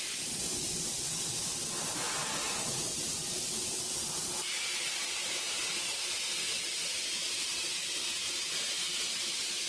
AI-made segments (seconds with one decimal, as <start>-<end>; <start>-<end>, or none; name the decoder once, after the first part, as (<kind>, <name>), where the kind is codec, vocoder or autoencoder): none